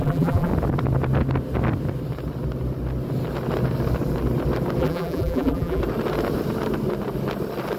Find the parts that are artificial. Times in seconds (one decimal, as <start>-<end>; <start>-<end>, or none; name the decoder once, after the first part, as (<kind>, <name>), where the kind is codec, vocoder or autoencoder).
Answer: 0.0-0.5 (vocoder, BigVGAN v2); 4.8-5.8